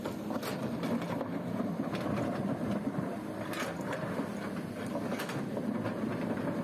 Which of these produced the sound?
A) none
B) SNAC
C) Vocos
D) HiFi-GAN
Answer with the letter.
A